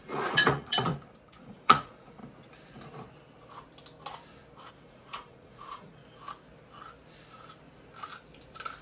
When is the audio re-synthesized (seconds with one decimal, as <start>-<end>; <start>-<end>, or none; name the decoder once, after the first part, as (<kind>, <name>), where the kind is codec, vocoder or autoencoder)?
0.0-0.9 (vocoder, Vocos); 1.4-2.2; 4.7-6.0